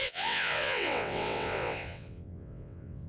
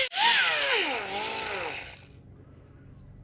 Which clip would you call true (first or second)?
second